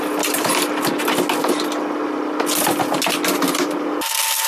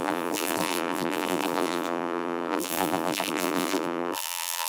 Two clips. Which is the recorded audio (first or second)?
first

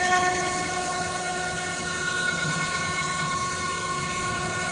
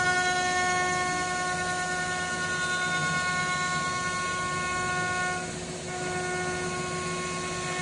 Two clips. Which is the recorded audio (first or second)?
second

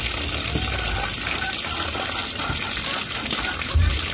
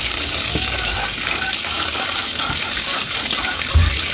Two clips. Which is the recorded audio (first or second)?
first